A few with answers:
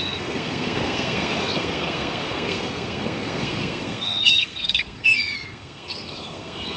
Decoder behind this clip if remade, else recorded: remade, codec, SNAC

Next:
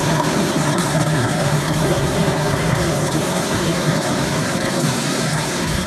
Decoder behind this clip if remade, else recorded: remade, codec, SNAC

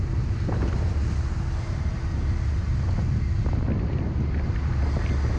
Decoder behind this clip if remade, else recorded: recorded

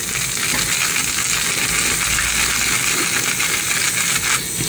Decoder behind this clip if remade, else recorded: recorded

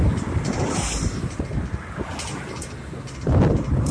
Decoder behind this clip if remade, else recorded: recorded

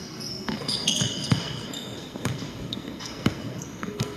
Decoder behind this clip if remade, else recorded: remade, codec, SNAC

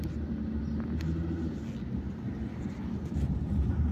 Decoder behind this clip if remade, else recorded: recorded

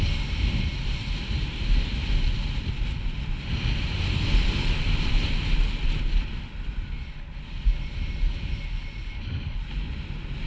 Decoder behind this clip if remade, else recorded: recorded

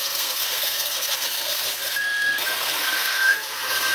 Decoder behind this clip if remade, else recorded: remade, codec, SNAC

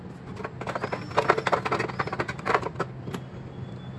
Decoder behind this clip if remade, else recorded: recorded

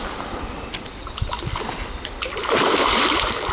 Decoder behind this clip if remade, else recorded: recorded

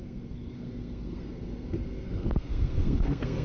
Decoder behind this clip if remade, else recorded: remade, codec, SNAC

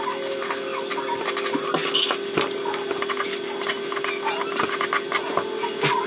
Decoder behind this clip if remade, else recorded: recorded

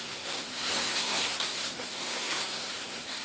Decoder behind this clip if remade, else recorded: remade, codec, SNAC